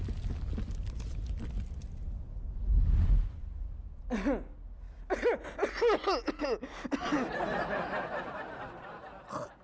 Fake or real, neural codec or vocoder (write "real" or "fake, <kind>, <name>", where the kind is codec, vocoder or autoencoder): real